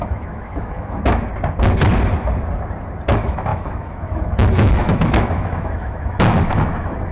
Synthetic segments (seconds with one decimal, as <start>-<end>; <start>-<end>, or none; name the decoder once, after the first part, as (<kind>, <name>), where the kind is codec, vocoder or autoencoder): 0.0-1.3 (autoencoder, DAC-VAE); 3.1-7.1